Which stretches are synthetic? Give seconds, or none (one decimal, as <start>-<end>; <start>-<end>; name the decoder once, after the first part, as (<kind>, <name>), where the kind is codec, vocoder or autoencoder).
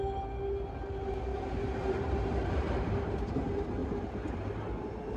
1.3-3.3 (vocoder, BigVGAN v2); 3.8-5.2